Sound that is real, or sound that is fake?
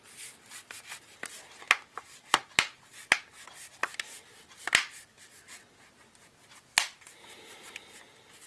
real